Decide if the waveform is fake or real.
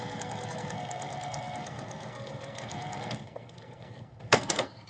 fake